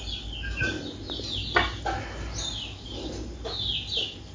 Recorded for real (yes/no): yes